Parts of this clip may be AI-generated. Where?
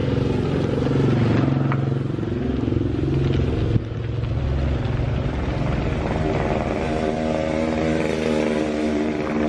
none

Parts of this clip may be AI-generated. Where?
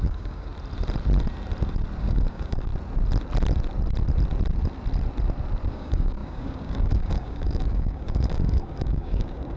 0.0-0.5 (codec, DAC); 2.0-2.7; 5.7-9.6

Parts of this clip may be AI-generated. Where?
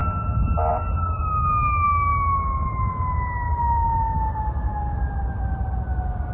none